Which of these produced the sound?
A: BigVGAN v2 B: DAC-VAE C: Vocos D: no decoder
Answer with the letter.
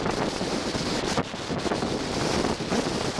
D